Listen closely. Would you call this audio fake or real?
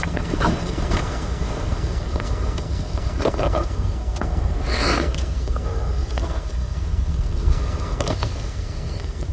fake